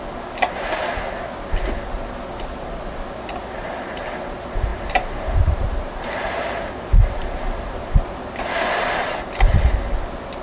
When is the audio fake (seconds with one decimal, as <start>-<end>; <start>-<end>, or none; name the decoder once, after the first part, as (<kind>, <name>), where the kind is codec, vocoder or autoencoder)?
4.7-8.4 (vocoder, BigVGAN v2)